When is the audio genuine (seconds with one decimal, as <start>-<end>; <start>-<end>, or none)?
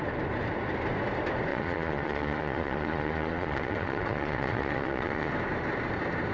0.0-1.5; 5.3-6.3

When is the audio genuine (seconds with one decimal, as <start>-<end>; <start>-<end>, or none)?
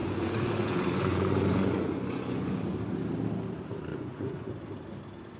2.6-3.9; 4.5-5.4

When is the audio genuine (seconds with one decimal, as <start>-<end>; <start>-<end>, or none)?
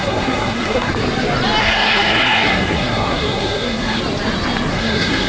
0.9-1.6; 4.0-4.7